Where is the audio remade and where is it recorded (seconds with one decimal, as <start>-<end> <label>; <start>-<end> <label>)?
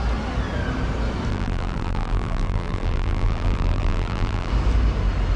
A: 0.0-1.3 recorded; 1.3-4.5 remade; 4.5-5.4 recorded